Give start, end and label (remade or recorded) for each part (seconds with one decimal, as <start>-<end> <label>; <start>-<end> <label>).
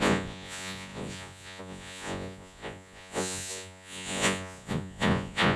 0.0-5.6 remade